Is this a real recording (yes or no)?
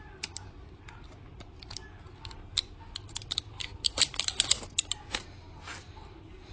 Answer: yes